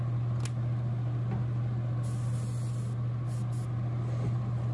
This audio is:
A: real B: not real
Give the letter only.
A